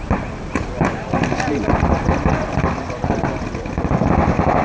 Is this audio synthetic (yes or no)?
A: no